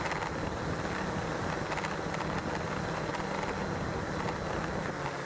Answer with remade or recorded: recorded